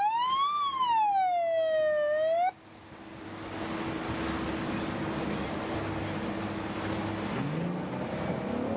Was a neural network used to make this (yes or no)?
no